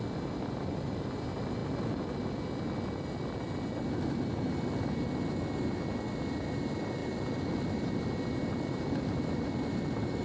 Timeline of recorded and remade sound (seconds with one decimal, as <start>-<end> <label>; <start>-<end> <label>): 0.0-10.2 recorded